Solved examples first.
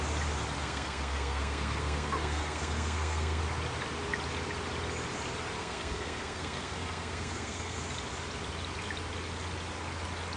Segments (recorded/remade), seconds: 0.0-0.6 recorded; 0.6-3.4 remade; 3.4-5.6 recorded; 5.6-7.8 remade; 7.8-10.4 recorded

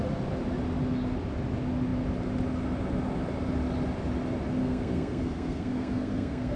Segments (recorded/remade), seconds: 0.0-4.6 recorded; 4.6-6.6 remade

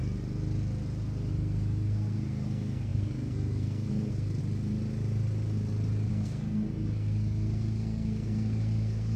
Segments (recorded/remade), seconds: 0.0-1.3 recorded; 1.3-4.4 remade; 4.4-6.1 recorded; 6.1-9.2 remade

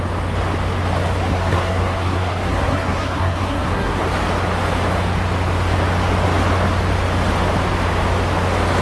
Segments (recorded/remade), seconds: 0.0-1.3 recorded; 1.3-4.0 remade; 4.0-8.8 recorded

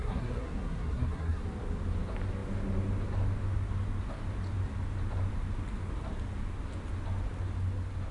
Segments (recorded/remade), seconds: 0.0-1.4 remade; 1.4-8.1 recorded

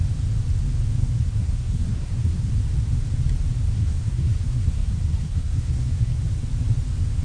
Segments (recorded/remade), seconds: 0.0-1.0 recorded; 1.0-2.5 remade; 2.5-3.7 recorded; 3.7-6.2 remade; 6.2-7.2 recorded